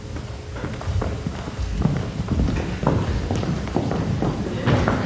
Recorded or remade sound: recorded